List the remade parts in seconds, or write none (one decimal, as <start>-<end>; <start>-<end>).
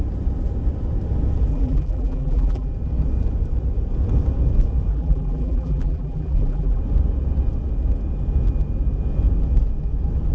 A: 1.5-2.7; 4.9-6.8